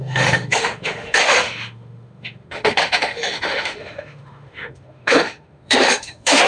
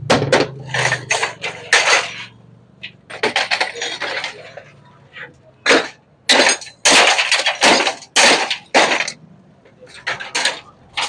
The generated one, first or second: first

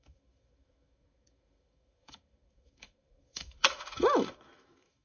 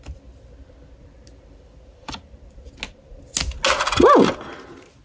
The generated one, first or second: first